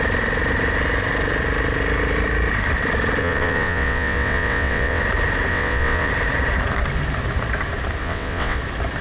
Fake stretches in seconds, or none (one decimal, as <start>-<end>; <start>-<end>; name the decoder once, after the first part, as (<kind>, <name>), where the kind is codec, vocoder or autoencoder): 3.2-5.0 (vocoder, WaveNeXt); 5.5-6.1; 8.0-8.6